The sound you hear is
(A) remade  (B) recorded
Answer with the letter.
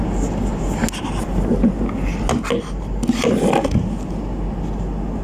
B